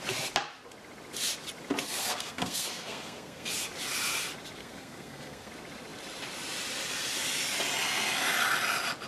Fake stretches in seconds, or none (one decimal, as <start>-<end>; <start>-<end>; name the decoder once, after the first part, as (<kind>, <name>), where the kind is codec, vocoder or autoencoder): 2.0-3.5 (codec, SNAC); 4.6-5.5